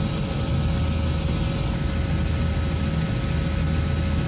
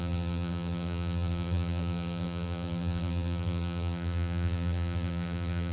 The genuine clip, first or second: first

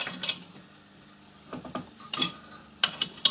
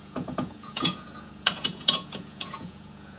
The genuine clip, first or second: first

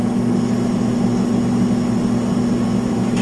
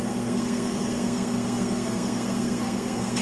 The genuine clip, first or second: first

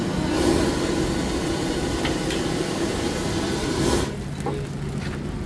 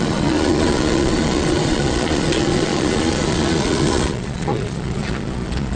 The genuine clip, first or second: first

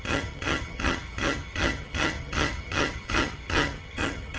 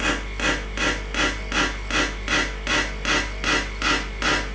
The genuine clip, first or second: second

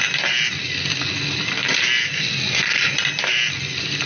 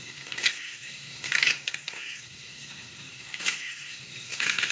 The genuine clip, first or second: first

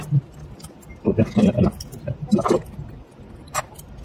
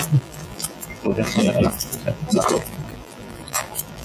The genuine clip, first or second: first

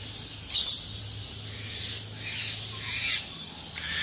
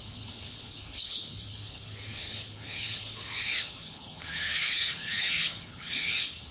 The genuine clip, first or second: first